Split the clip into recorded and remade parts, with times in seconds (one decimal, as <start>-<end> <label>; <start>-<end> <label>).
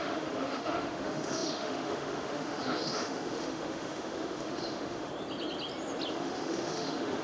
0.0-5.1 remade; 5.1-6.1 recorded; 6.1-7.2 remade